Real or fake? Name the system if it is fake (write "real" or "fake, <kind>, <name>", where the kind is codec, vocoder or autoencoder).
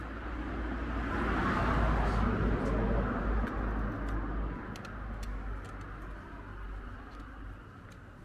real